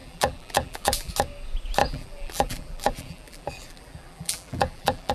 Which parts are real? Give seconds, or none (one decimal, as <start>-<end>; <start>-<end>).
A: 1.1-1.8

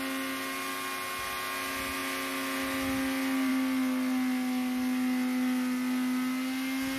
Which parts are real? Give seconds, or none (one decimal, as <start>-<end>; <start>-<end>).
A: 0.0-7.0

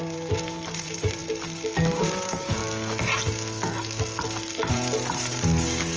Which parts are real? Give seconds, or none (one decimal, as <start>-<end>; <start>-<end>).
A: 1.2-2.0; 2.6-4.7

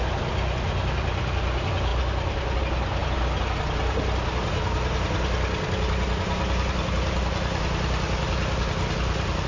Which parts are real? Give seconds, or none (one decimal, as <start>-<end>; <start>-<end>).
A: 0.0-9.5

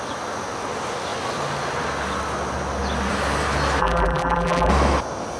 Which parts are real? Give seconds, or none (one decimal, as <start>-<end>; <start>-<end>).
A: 0.0-3.8; 4.7-5.4

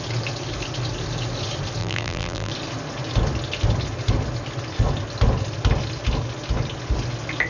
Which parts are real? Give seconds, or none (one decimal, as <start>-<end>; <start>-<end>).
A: 0.0-1.8; 2.5-7.5